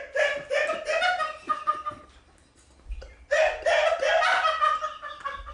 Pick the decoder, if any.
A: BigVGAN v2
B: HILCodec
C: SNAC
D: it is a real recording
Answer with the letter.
D